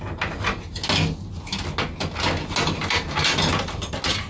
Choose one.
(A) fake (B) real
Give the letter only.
B